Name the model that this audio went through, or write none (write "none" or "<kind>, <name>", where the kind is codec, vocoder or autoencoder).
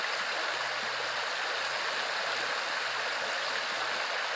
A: none